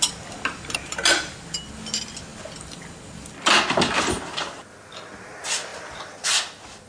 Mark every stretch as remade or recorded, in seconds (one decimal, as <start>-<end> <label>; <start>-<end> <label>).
0.0-6.9 recorded